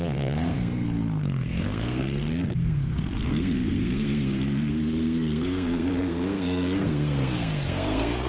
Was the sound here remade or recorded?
remade